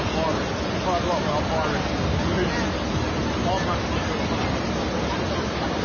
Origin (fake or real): real